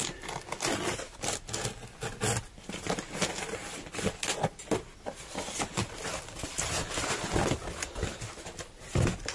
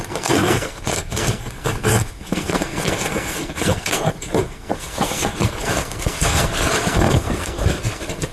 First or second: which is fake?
second